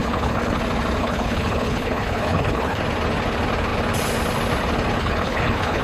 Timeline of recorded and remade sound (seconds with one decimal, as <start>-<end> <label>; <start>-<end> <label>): 0.0-0.6 remade; 0.6-1.0 recorded; 1.0-2.8 remade; 2.8-5.0 recorded; 5.0-5.8 remade